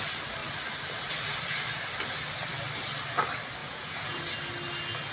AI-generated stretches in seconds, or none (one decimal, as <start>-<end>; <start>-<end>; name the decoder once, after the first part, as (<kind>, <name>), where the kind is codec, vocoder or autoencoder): 3.6-4.2 (vocoder, Vocos)